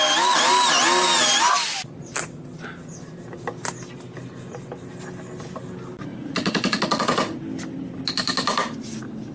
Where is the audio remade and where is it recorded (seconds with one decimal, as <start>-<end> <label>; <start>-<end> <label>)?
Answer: 0.0-6.1 recorded; 6.1-7.4 remade; 7.4-9.3 recorded